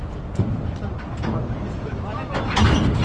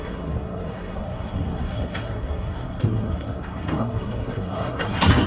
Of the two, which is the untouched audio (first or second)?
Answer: first